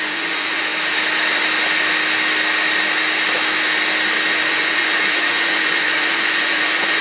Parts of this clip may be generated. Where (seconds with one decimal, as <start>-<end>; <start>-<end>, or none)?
0.0-0.7; 4.5-7.0